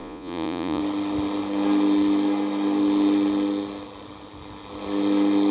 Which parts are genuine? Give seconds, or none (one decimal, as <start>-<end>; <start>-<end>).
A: 0.8-5.5